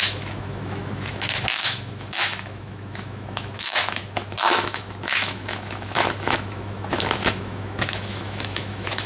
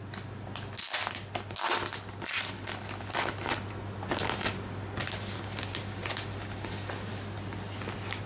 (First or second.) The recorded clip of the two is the second